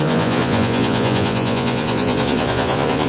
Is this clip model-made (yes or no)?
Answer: yes